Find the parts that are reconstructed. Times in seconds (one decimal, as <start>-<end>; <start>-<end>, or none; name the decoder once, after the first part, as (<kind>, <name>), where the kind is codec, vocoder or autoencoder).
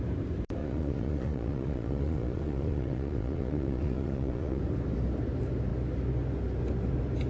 0.6-4.6 (vocoder, Vocos)